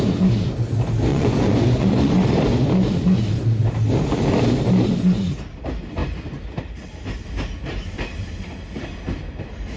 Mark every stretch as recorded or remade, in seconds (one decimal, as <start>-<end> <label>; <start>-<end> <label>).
0.0-1.1 recorded; 1.1-2.1 remade; 2.1-9.8 recorded